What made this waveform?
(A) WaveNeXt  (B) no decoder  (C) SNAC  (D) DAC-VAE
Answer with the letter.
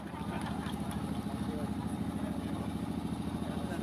B